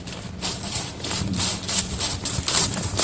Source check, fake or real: real